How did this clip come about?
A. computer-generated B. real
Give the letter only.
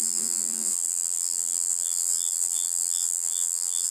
A